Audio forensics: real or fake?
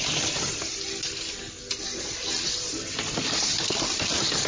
real